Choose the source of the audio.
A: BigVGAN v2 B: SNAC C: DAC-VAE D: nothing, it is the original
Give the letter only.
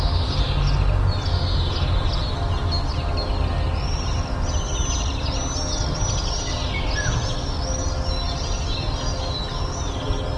D